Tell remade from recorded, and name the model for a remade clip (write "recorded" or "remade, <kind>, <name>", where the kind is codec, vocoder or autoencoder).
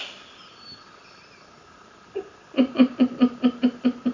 recorded